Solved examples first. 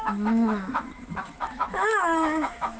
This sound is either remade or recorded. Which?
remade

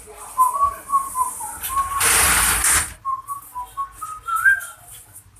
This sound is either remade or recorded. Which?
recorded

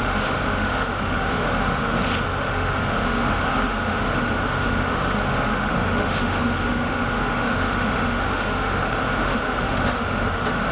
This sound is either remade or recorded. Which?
remade